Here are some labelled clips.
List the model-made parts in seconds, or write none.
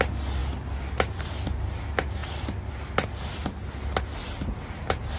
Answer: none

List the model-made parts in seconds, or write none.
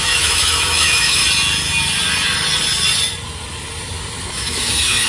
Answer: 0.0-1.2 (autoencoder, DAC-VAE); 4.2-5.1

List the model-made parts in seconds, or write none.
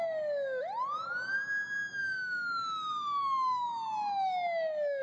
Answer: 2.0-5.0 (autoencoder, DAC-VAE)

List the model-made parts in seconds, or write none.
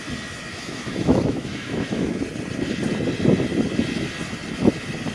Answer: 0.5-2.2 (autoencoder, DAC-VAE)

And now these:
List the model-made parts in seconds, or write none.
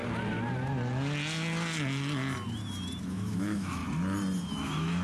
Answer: 3.0-3.8 (autoencoder, DAC-VAE); 4.5-5.0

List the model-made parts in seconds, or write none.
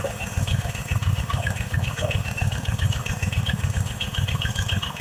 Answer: 0.0-5.0 (autoencoder, DAC-VAE)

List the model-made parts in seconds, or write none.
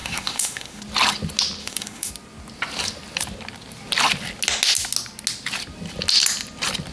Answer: 0.0-0.8 (autoencoder, DAC-VAE); 1.6-2.1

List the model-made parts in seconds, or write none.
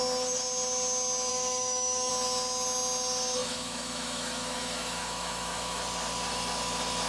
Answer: 1.3-2.1 (autoencoder, DAC-VAE); 3.4-5.8